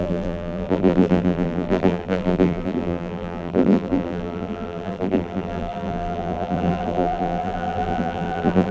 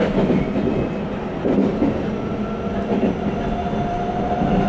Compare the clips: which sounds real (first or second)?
second